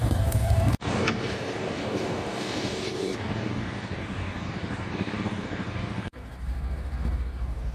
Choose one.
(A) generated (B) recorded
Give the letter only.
A